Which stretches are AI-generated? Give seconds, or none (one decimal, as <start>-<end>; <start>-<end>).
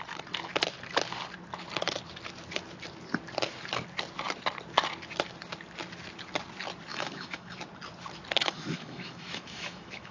6.9-7.5; 8.4-10.1